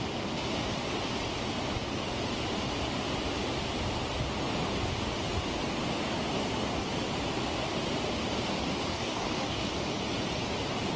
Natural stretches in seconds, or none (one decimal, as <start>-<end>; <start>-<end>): 0.0-8.9; 9.7-11.0